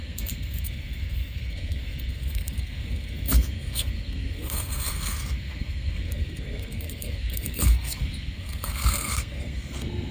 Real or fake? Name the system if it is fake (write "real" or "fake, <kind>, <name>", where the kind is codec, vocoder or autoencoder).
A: fake, codec, SNAC